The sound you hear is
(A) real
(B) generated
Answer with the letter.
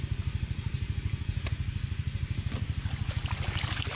A